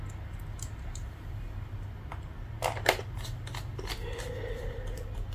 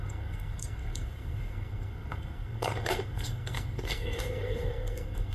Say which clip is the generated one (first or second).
second